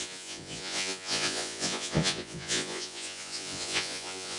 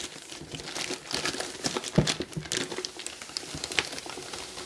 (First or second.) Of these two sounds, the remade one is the first